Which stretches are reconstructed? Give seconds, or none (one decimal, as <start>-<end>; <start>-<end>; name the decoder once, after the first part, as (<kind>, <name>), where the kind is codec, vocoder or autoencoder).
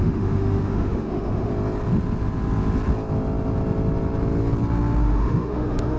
0.0-1.5 (autoencoder, DAC-VAE); 5.0-6.0